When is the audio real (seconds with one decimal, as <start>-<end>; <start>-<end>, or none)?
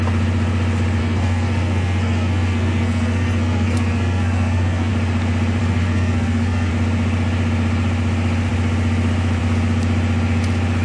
0.0-1.0; 4.9-5.6; 6.7-10.8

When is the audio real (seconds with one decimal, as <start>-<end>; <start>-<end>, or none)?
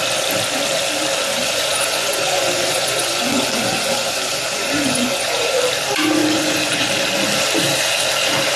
0.0-1.3; 5.6-6.2; 6.9-8.6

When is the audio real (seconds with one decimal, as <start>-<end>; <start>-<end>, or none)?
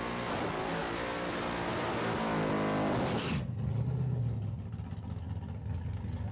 0.0-6.3